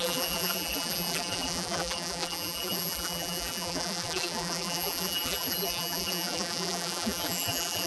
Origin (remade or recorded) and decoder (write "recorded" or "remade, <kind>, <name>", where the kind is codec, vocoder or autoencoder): remade, vocoder, BigVGAN v2